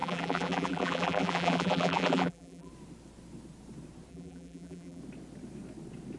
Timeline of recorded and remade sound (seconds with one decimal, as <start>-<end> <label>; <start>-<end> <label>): 0.0-2.7 remade; 2.7-4.1 recorded; 4.1-5.0 remade; 5.0-6.2 recorded